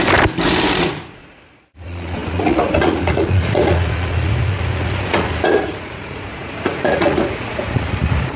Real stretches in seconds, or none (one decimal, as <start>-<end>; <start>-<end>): 0.0-0.8